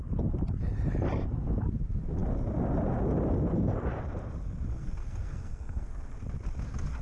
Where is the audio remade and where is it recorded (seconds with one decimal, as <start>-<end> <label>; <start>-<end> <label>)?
0.0-4.7 recorded; 4.7-6.1 remade; 6.1-7.0 recorded